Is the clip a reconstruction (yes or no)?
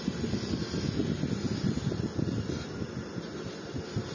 no